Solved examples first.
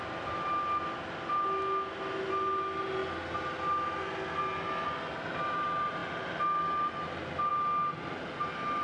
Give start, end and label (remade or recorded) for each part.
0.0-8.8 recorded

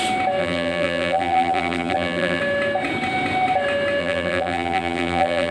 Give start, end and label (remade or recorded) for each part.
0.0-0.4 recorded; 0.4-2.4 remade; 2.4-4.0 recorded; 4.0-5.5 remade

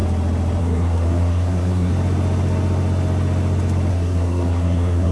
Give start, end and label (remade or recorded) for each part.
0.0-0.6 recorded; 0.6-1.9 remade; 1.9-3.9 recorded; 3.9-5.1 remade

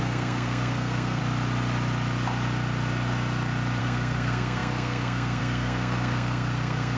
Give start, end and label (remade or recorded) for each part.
0.0-1.2 remade; 1.2-3.8 recorded; 3.8-7.0 remade

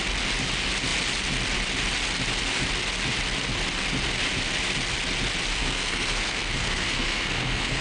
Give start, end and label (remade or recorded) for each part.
0.0-5.6 recorded; 5.6-7.8 remade

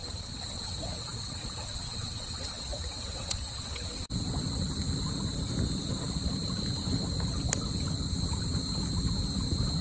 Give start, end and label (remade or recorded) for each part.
0.0-4.1 remade; 4.1-9.8 recorded